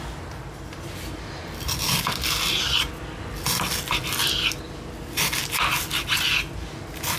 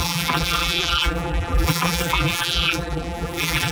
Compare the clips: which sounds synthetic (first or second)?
second